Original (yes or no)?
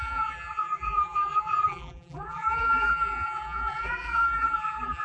no